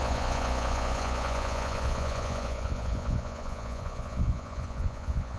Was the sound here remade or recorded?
remade